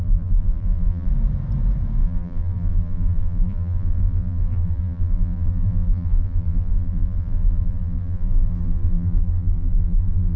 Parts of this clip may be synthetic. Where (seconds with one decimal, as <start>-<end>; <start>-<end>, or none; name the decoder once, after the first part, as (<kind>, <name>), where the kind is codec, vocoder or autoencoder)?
0.0-1.1 (vocoder, BigVGAN v2); 2.0-10.4